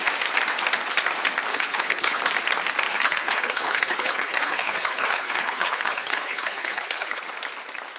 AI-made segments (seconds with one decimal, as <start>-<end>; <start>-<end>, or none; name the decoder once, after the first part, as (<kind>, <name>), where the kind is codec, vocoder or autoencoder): 1.5-2.2 (codec, HILCodec); 2.9-7.2

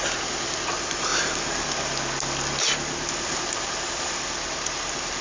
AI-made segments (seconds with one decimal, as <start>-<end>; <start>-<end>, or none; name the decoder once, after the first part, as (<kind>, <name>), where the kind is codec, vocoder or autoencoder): none

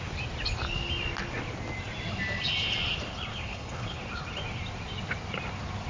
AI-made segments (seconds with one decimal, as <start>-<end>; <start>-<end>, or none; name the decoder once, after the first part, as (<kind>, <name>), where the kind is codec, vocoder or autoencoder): 3.3-4.0 (codec, HILCodec)

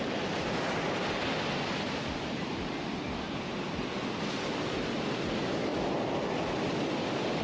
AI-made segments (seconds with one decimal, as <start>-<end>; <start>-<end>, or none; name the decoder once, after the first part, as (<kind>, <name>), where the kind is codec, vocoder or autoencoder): none